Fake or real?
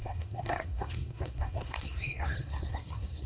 fake